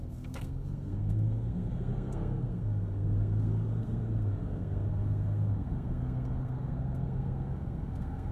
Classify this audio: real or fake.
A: fake